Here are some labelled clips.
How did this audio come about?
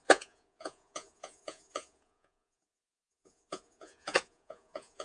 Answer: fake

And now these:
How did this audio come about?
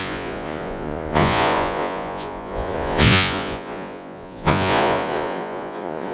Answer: fake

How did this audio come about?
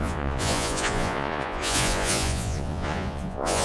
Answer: fake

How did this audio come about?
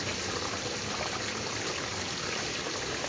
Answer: real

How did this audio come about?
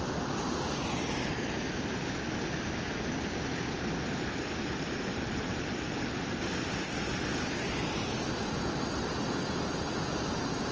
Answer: real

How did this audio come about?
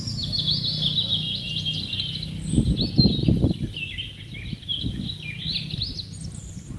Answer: real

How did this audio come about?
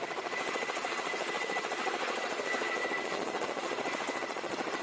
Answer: fake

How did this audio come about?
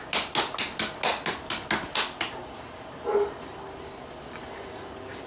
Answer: real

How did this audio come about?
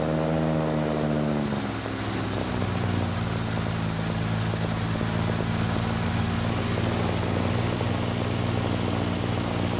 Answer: real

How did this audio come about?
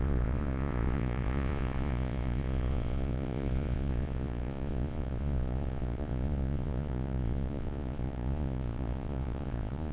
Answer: fake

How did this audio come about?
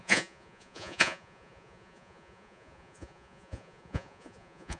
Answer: fake